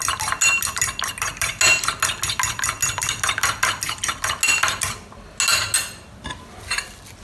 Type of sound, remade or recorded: recorded